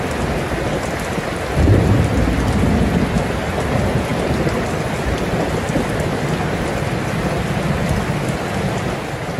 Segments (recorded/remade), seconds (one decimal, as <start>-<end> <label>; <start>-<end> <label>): 0.0-9.4 recorded